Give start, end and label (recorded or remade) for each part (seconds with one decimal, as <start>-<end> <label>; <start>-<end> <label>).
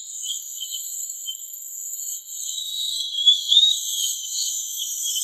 0.0-2.5 recorded; 2.5-4.8 remade; 4.8-5.2 recorded